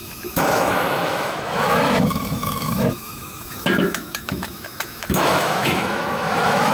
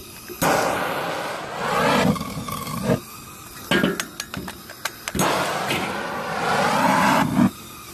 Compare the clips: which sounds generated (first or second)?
first